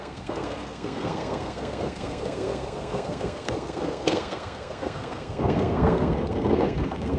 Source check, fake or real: fake